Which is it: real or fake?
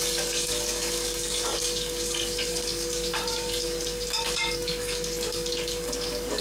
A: fake